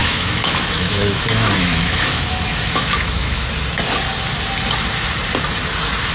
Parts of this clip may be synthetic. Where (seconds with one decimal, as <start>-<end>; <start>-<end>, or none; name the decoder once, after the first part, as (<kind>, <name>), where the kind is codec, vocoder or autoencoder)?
0.0-3.5 (autoencoder, DAC-VAE)